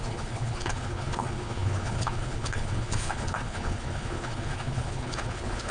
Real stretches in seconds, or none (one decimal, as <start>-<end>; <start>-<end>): none